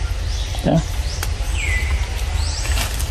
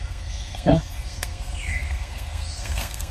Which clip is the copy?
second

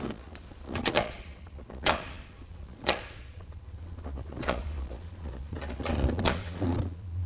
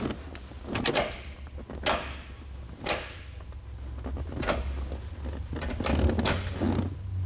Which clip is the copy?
first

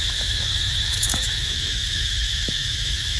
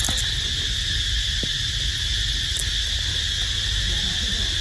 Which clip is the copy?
first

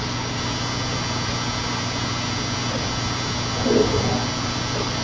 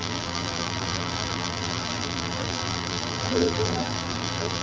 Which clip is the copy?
second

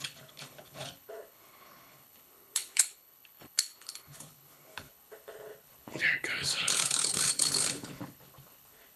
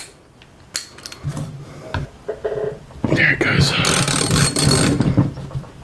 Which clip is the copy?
first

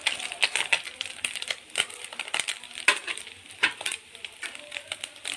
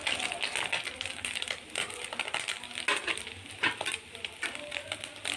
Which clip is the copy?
first